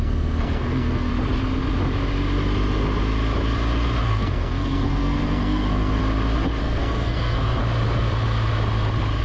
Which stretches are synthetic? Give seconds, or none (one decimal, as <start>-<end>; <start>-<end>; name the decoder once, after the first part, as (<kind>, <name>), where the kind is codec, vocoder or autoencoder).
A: 0.0-1.1 (codec, SNAC); 4.0-6.0; 6.6-7.6